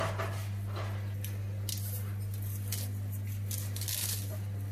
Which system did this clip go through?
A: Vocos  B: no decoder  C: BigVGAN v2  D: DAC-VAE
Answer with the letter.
B